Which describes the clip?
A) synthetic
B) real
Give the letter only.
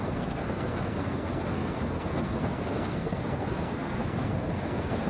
A